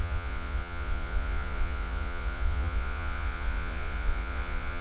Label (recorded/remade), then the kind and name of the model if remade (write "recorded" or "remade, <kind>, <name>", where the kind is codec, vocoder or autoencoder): remade, vocoder, Vocos